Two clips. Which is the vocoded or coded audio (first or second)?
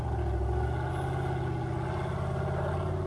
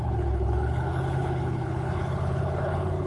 second